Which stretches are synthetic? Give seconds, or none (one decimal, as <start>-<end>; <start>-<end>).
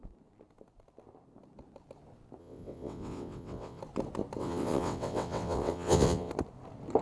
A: 2.4-3.8; 4.4-6.3